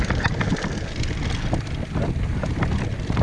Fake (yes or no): no